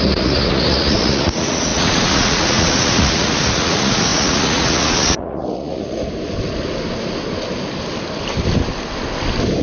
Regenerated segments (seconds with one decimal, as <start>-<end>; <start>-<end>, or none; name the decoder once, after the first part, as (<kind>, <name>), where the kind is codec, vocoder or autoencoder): 0.0-6.0 (vocoder, Vocos)